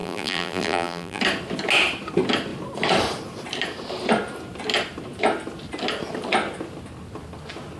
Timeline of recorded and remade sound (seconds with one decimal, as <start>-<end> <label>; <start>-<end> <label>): 0.0-1.2 remade; 1.2-7.8 recorded